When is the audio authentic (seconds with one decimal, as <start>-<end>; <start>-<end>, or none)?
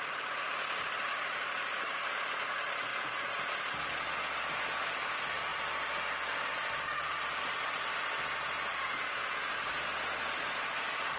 0.0-2.9; 3.4-8.7; 9.5-11.2